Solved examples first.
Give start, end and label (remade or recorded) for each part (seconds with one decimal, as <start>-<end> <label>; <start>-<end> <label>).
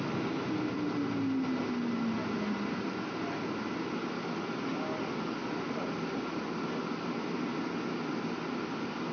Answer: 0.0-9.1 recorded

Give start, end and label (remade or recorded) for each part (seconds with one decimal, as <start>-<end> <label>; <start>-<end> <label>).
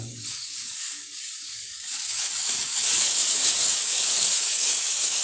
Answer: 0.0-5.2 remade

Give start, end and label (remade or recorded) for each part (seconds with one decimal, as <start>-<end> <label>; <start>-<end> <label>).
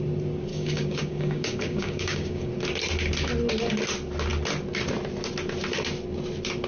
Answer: 0.0-0.5 recorded; 0.5-2.5 remade; 2.5-6.7 recorded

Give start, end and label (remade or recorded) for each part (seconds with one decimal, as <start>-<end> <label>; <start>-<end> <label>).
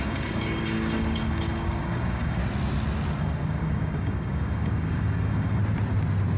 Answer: 0.0-2.4 remade; 2.4-3.2 recorded; 3.2-5.6 remade; 5.6-6.4 recorded